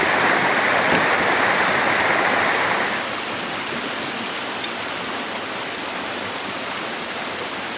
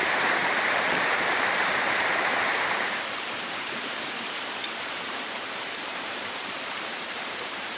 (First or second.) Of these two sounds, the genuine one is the first